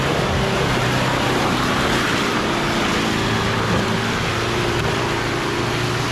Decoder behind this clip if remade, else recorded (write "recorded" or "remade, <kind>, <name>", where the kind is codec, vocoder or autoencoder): recorded